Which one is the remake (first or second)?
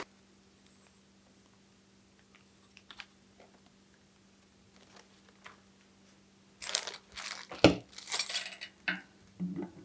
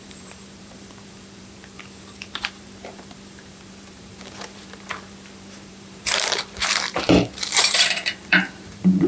second